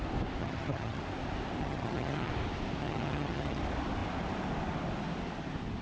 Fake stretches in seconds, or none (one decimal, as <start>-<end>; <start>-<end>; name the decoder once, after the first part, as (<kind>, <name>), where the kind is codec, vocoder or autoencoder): 0.4-1.0 (vocoder, HiFi-GAN); 1.6-2.3; 2.8-3.6